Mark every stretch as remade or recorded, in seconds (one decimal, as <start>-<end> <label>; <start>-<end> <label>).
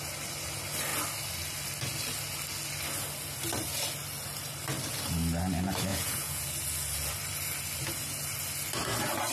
0.0-5.9 recorded; 5.9-6.4 remade; 6.4-9.3 recorded